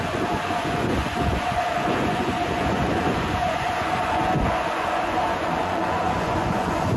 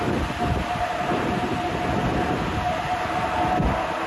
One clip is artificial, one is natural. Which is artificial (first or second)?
first